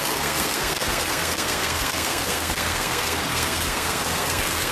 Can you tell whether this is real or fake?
fake